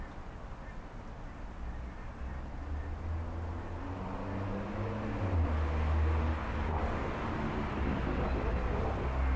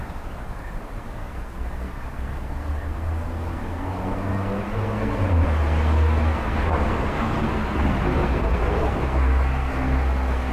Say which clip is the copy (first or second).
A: second